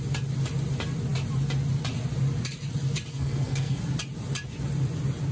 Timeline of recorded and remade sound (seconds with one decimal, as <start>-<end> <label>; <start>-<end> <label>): 0.0-3.1 recorded; 3.1-3.8 remade; 3.8-5.3 recorded